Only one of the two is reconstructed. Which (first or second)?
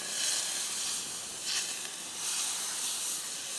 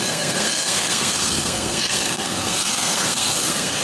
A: second